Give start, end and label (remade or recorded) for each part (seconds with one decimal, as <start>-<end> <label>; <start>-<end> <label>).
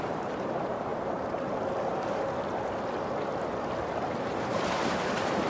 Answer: 0.0-0.9 remade; 0.9-4.2 recorded; 4.2-5.5 remade